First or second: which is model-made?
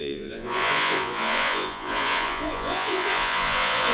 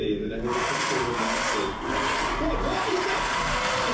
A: first